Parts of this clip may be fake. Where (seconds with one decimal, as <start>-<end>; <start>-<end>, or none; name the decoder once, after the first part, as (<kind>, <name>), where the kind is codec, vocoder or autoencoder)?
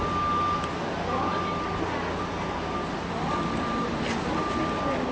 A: none